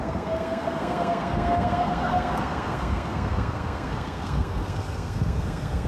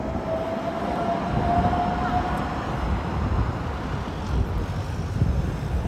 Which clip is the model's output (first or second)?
first